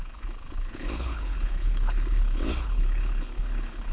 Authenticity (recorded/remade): remade